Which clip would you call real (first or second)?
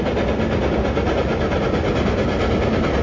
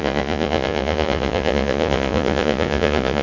first